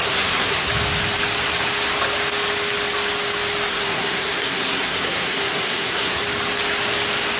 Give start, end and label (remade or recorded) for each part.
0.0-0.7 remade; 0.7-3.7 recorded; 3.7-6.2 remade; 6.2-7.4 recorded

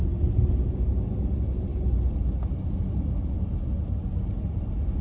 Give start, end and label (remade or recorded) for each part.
0.0-5.0 recorded

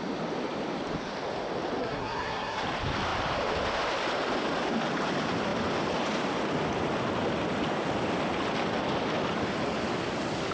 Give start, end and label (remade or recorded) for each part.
0.0-1.8 recorded; 1.8-2.6 remade; 2.6-10.5 recorded

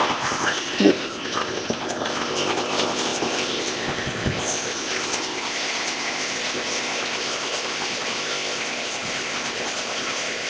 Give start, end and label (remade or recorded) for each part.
0.0-10.5 remade

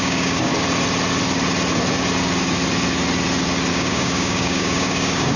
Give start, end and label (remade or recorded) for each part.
0.0-0.5 remade; 0.5-3.7 recorded; 3.7-5.4 remade

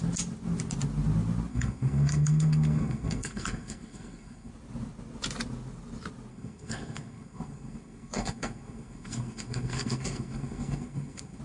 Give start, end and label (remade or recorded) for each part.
0.0-1.5 recorded; 1.5-4.5 remade; 4.5-6.3 recorded; 6.3-11.4 remade

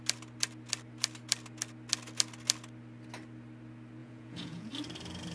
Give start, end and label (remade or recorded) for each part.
0.0-4.0 recorded; 4.0-4.7 remade; 4.7-5.3 recorded